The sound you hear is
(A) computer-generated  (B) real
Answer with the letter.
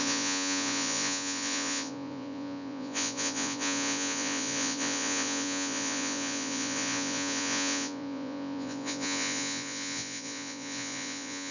A